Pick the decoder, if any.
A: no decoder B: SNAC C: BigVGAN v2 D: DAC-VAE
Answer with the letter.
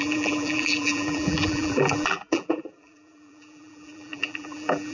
C